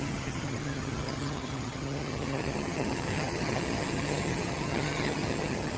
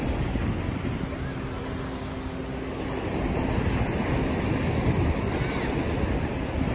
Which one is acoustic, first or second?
second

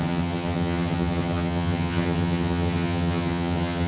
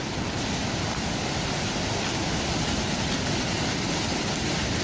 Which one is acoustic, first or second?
second